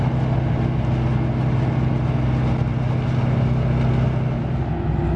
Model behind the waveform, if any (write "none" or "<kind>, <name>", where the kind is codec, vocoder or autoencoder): none